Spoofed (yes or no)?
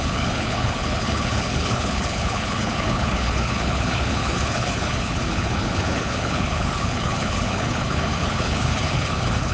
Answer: yes